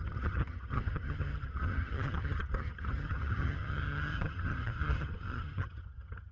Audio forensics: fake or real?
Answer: fake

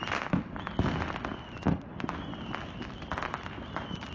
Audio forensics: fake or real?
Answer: real